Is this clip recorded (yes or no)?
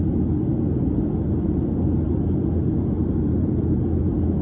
yes